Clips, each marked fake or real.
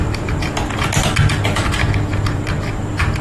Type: real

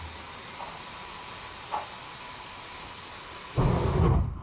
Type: real